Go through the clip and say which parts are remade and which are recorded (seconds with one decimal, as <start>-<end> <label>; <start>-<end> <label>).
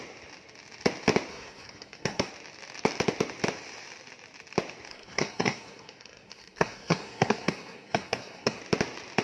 0.0-1.3 recorded; 1.3-2.3 remade; 2.3-4.9 recorded; 4.9-8.6 remade; 8.6-9.2 recorded